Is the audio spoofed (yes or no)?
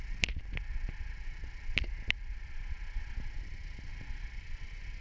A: no